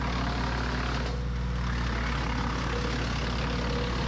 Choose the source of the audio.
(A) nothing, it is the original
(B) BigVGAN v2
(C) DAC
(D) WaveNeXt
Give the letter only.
A